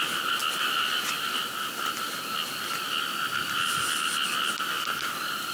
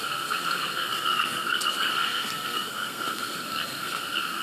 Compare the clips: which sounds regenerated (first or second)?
second